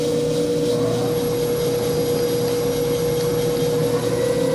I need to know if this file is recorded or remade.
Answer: recorded